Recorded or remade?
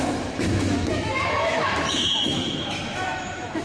remade